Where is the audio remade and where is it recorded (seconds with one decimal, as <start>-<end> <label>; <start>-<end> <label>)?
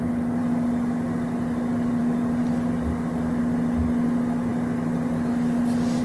0.0-6.0 recorded